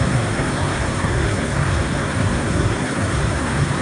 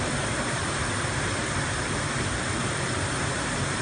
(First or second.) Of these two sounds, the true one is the second